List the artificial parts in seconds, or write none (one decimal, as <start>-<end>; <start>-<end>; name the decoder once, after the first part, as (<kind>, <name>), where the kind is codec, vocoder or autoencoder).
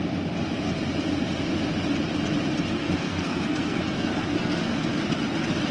2.8-4.9 (codec, SNAC)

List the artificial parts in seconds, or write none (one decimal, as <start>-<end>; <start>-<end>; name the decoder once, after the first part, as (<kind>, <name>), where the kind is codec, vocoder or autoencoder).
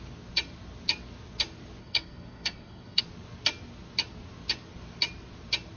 1.8-3.0 (codec, SNAC)